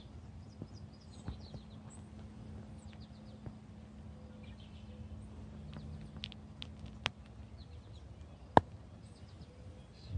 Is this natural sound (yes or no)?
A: yes